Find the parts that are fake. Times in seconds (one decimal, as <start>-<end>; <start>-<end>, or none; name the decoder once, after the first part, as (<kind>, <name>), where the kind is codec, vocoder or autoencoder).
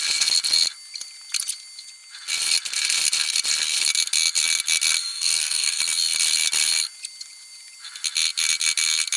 5.0-5.8 (codec, SNAC)